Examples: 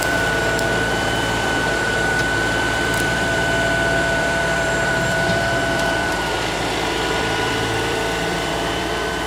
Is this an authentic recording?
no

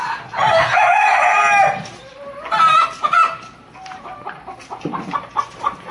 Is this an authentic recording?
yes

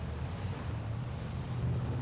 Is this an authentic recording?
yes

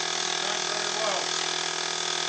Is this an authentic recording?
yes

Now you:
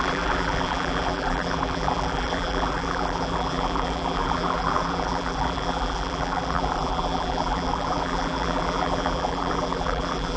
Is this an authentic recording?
no